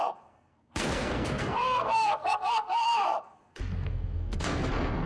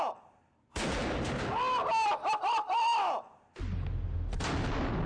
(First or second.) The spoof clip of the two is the first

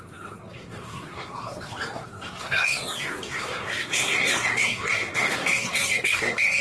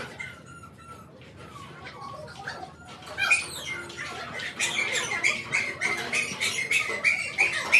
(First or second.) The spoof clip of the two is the first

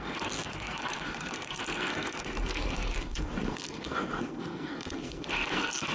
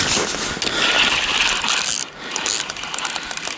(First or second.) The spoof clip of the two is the first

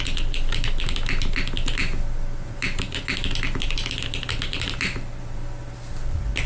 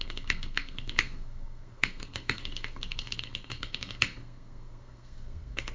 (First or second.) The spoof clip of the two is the second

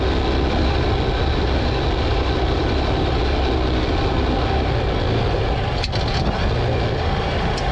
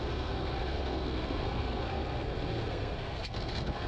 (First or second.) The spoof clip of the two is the second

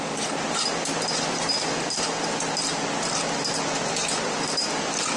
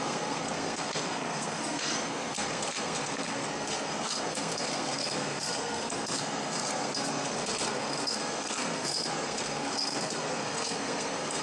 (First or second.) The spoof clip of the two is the second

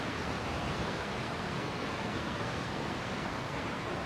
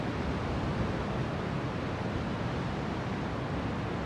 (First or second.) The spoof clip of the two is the first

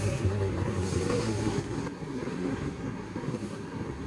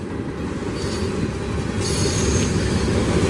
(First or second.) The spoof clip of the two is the first